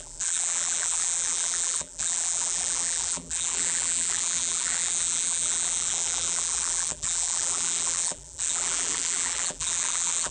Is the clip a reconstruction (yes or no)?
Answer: yes